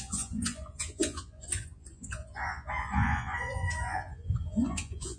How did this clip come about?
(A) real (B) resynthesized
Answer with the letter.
B